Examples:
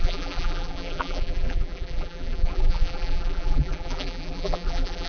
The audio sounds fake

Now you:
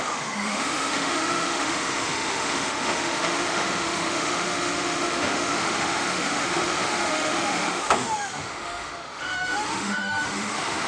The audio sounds fake